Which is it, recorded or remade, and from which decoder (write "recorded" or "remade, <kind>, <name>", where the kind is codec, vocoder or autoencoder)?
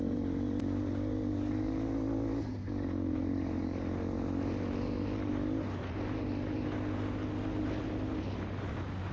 recorded